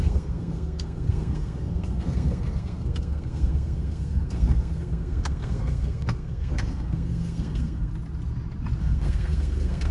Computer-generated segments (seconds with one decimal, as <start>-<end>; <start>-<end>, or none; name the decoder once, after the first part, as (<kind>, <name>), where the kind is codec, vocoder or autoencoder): 0.0-7.9 (codec, SNAC); 8.8-9.9